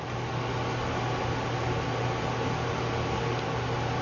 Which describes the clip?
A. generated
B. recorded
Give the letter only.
B